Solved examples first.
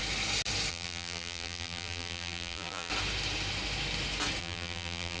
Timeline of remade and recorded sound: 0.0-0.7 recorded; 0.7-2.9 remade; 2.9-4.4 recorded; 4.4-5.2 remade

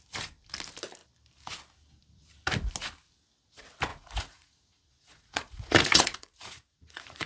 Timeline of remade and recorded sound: 0.0-3.9 recorded; 3.9-7.3 remade

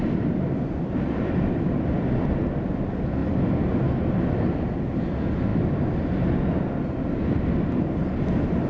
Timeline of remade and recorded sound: 0.0-8.7 recorded